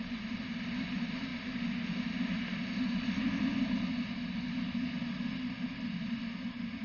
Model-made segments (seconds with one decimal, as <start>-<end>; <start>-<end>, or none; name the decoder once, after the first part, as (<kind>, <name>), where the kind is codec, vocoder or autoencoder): none